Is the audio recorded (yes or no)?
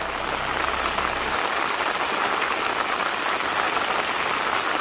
yes